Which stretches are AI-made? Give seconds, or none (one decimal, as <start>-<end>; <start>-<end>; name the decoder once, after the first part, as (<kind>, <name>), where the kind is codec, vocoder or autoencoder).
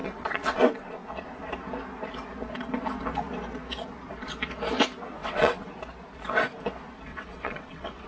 0.0-0.6 (vocoder, WaveNeXt); 5.2-5.7; 7.1-8.1